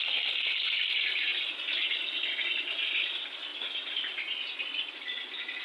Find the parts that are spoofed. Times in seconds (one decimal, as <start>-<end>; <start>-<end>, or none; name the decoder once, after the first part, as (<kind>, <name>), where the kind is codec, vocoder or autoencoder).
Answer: none